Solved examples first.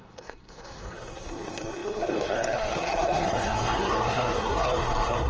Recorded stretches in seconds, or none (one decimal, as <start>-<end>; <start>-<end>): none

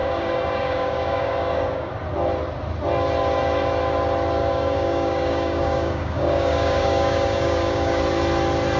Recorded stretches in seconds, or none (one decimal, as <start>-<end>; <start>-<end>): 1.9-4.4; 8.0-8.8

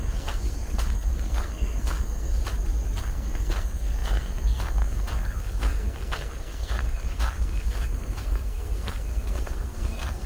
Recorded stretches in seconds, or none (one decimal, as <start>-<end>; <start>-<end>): 2.4-3.0

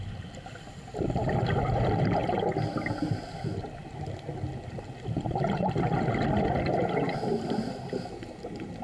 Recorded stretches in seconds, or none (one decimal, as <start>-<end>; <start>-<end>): 0.0-8.8